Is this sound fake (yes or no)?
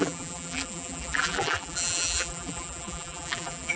yes